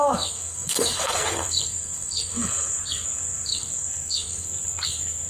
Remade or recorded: remade